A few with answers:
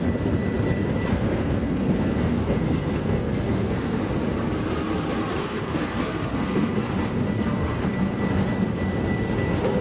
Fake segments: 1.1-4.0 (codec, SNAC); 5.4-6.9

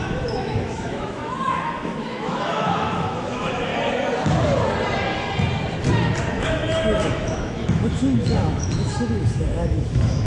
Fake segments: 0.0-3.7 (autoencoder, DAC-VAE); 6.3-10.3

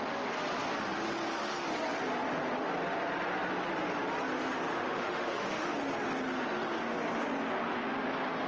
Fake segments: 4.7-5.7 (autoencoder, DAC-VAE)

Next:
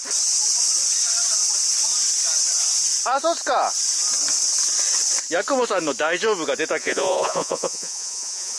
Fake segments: 6.8-8.6 (vocoder, Vocos)